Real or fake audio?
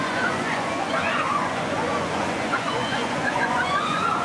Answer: fake